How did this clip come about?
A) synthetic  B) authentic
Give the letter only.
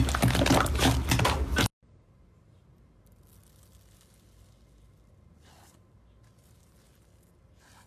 B